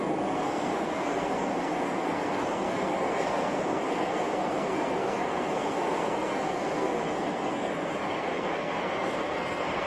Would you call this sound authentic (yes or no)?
no